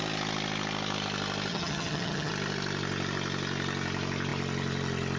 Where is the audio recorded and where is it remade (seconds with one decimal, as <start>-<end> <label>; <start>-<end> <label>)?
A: 0.0-1.5 recorded; 1.5-2.3 remade; 2.3-5.2 recorded